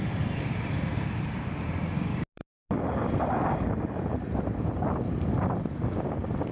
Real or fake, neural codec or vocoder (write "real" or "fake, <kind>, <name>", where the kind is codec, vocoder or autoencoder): real